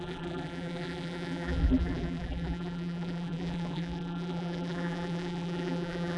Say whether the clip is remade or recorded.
remade